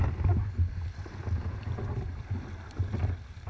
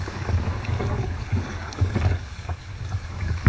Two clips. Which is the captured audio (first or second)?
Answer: first